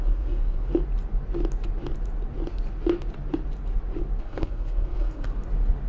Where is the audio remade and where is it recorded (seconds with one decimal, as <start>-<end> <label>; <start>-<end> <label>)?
0.0-0.7 remade; 0.7-4.2 recorded; 4.2-5.3 remade; 5.3-5.9 recorded